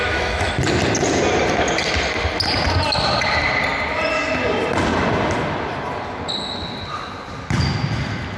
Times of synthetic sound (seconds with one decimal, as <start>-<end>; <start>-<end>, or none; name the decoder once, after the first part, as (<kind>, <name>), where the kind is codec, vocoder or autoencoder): 0.0-0.5 (autoencoder, DAC-VAE)

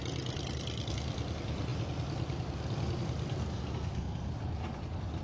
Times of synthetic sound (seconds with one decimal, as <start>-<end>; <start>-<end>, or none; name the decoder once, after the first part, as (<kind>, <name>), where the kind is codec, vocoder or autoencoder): 3.5-4.3 (codec, SNAC)